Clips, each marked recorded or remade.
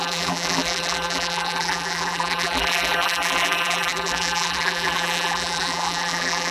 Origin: remade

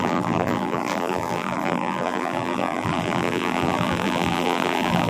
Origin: remade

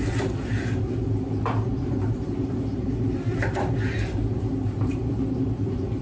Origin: remade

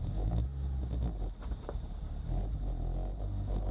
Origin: recorded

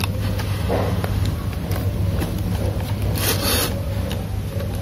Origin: recorded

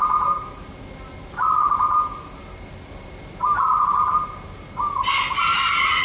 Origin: recorded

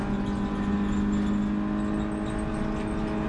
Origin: recorded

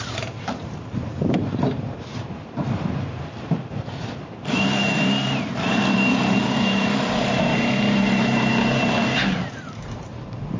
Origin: remade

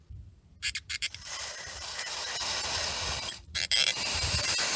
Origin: remade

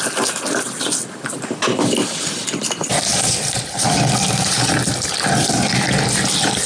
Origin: remade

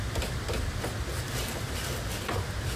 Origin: recorded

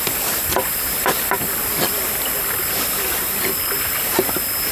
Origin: recorded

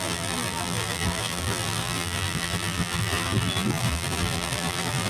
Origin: remade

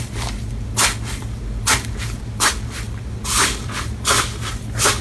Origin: remade